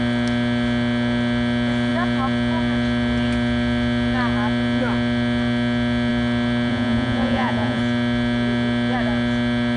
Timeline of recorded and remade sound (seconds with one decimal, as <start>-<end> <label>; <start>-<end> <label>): 0.0-6.7 recorded; 6.7-7.8 remade; 7.8-9.8 recorded